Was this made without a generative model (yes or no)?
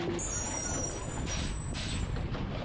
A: yes